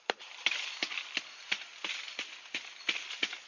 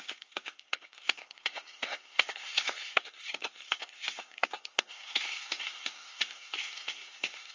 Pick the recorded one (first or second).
first